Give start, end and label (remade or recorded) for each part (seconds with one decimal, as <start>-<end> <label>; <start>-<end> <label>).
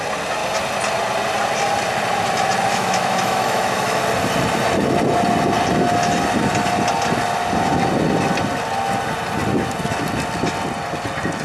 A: 0.0-2.7 recorded; 2.7-4.0 remade; 4.0-11.4 recorded